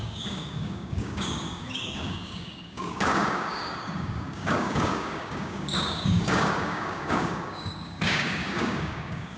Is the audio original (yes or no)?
no